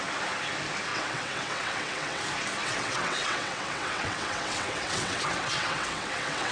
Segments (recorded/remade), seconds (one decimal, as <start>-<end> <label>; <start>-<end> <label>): 0.0-0.9 recorded; 0.9-2.2 remade; 2.2-2.6 recorded; 2.6-6.5 remade